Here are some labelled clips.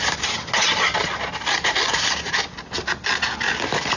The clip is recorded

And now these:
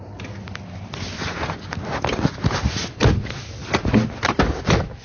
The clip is recorded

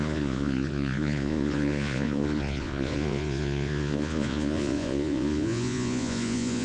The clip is remade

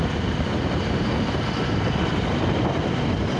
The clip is recorded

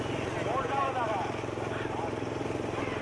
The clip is recorded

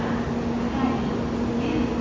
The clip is recorded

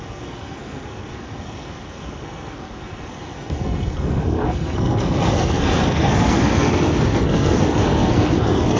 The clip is remade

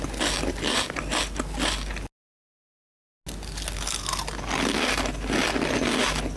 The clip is recorded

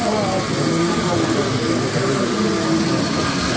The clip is recorded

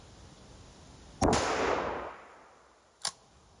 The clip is recorded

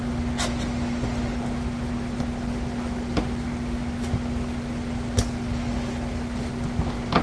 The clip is recorded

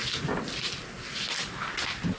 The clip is recorded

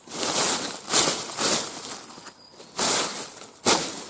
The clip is recorded